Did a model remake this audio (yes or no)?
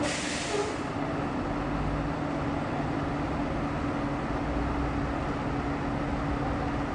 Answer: no